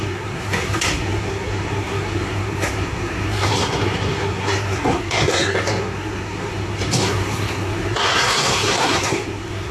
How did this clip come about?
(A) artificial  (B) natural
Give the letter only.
A